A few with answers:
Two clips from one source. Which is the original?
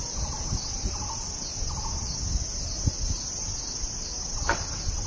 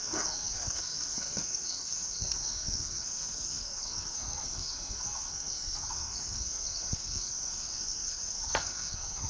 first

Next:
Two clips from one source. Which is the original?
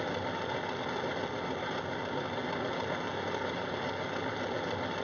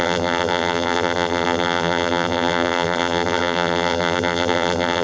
first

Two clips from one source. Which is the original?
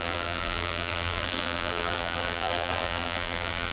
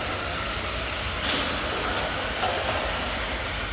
second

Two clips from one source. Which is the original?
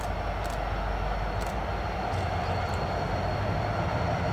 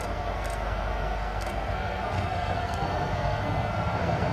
first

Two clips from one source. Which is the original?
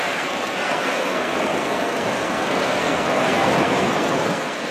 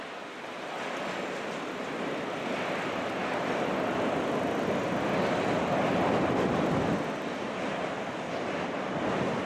second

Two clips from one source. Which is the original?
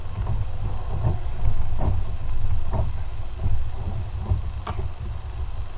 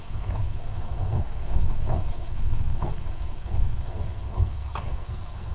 first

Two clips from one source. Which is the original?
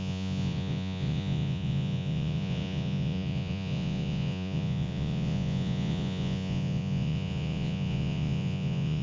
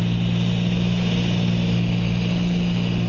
second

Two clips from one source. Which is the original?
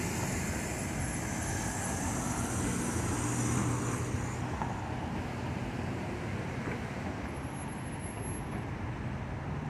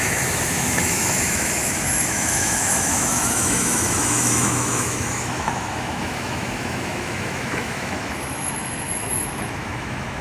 first